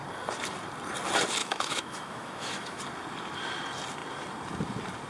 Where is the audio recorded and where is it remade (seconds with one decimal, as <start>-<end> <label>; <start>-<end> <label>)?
0.0-1.4 recorded; 1.4-2.8 remade; 2.8-5.1 recorded